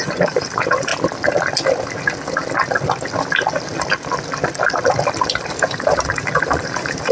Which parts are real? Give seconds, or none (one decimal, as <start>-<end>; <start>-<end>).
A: 0.9-5.2